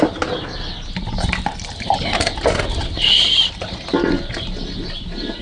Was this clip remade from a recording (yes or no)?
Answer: no